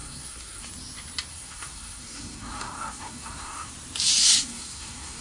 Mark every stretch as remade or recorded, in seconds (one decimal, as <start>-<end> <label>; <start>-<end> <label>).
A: 0.0-0.7 remade; 0.7-1.3 recorded; 1.3-3.7 remade; 3.7-4.2 recorded; 4.2-5.2 remade